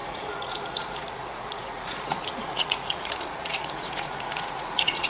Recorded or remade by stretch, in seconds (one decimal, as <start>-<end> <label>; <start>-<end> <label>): 0.0-5.1 remade